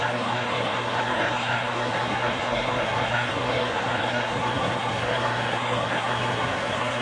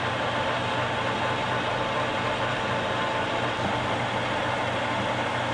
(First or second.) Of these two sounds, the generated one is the first